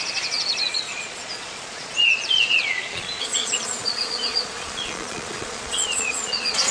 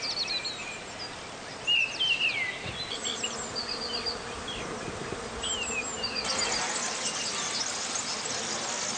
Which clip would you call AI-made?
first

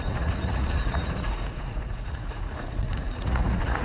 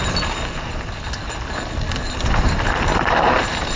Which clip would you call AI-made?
first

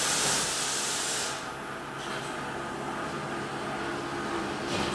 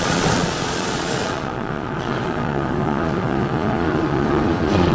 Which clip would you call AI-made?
second